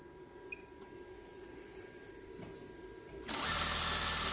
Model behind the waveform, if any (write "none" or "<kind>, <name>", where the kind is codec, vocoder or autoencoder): none